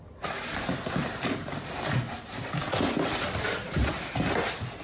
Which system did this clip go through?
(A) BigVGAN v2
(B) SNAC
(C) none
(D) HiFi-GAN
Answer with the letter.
C